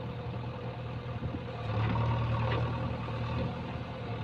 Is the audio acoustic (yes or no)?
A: yes